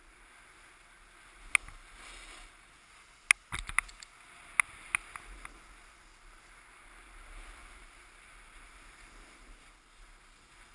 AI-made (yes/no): no